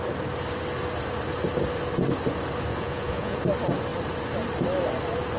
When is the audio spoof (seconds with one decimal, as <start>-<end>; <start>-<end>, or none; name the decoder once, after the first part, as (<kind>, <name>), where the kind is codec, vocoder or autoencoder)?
2.7-3.4 (vocoder, Vocos)